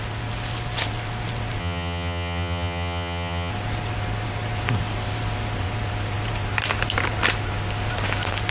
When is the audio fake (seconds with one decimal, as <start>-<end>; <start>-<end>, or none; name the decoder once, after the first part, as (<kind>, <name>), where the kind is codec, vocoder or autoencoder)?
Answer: 1.6-3.5 (vocoder, HiFi-GAN)